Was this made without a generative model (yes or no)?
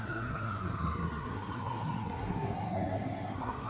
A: no